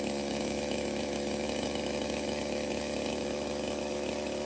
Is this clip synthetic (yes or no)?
yes